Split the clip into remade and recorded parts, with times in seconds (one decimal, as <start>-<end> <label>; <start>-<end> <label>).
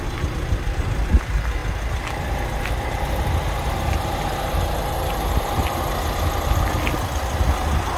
0.0-8.0 recorded